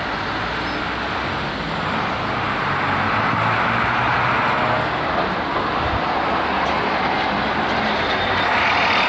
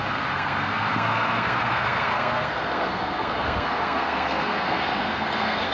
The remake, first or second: second